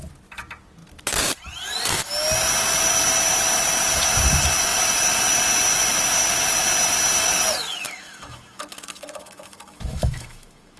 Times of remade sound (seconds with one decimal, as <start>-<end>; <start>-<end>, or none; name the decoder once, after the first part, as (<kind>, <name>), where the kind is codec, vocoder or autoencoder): 7.7-10.8 (autoencoder, DAC-VAE)